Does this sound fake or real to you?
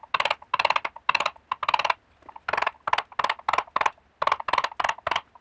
real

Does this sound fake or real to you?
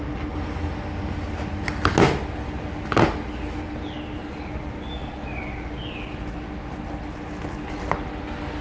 real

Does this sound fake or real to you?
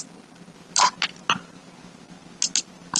real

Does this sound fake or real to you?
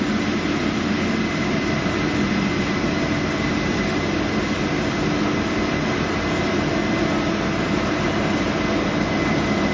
real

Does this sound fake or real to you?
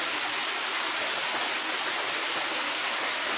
real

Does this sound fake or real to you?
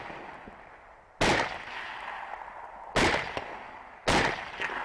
real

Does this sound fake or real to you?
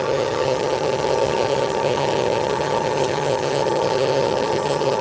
fake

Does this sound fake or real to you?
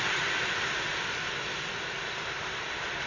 fake